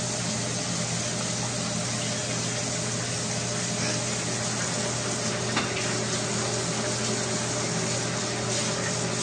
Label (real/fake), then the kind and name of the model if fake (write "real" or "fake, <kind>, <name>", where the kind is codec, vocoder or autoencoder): real